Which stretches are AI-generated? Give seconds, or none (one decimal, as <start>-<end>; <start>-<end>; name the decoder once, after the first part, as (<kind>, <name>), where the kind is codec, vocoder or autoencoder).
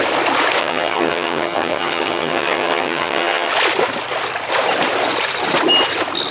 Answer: 0.6-3.5 (vocoder, HiFi-GAN)